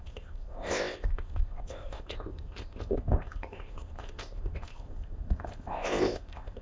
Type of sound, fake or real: fake